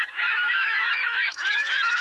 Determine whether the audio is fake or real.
fake